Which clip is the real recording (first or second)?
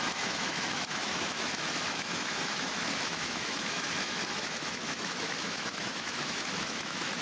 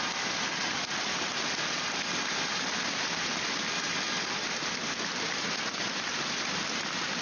second